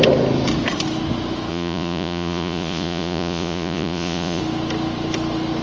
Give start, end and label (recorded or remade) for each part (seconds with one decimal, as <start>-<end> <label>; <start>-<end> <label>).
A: 0.0-1.5 recorded; 1.5-4.4 remade; 4.4-5.6 recorded